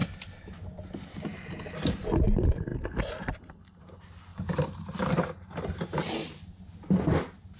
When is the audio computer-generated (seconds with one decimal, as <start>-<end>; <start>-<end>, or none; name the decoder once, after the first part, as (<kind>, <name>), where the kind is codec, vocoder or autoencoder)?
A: 4.3-6.6 (vocoder, BigVGAN v2)